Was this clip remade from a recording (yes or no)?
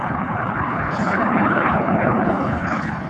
yes